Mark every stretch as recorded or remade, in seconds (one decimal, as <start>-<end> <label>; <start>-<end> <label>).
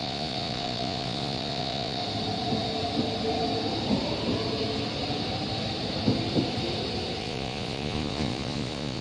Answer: 0.0-2.0 remade; 2.0-7.2 recorded; 7.2-9.0 remade